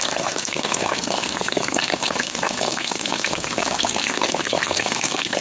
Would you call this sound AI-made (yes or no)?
yes